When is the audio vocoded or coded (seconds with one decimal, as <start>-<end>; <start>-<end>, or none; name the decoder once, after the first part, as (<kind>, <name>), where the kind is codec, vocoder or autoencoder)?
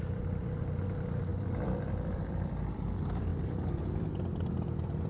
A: 1.3-2.2 (vocoder, BigVGAN v2); 3.3-3.8